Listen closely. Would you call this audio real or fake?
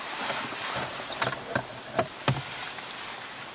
real